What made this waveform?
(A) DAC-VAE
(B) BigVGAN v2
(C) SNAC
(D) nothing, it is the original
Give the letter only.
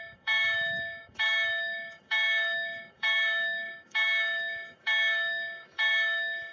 A